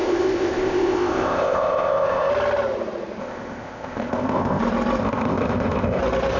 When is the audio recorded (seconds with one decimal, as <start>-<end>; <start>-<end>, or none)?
2.3-3.2; 4.6-5.0; 6.0-6.4